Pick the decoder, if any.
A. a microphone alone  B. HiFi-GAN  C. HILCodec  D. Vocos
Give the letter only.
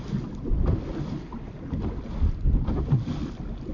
A